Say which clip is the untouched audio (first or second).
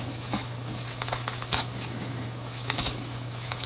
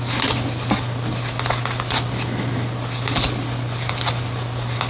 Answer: second